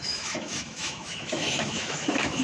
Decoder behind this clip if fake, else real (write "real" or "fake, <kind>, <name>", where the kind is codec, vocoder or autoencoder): fake, autoencoder, DAC-VAE